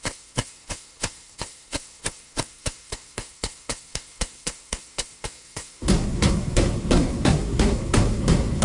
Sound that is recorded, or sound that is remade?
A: remade